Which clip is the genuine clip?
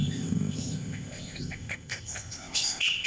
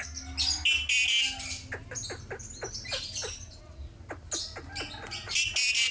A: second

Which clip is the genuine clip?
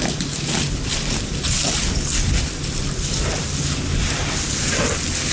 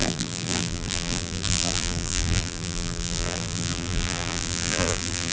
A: first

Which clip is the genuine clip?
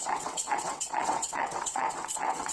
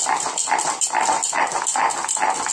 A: second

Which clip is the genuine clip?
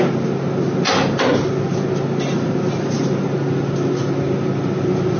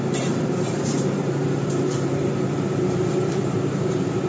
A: first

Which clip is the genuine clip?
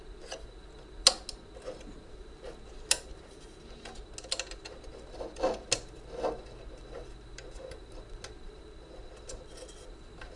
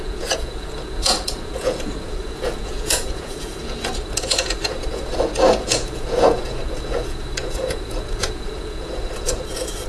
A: first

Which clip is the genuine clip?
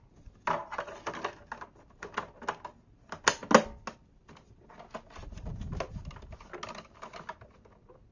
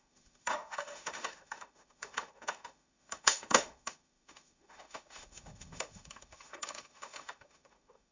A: first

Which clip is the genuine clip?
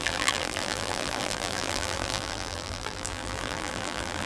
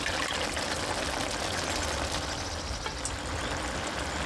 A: second